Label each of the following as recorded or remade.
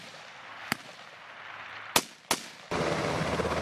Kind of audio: recorded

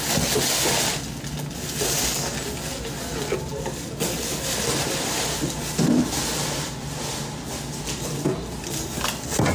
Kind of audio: recorded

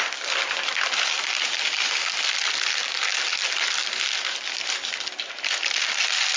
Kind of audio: recorded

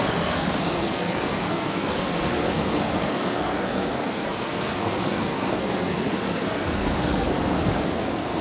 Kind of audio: remade